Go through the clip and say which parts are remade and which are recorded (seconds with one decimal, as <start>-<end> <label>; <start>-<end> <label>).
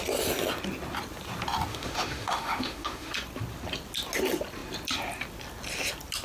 0.0-1.7 recorded; 1.7-3.1 remade; 3.1-6.2 recorded